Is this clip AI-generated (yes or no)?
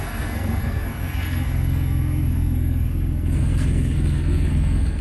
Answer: yes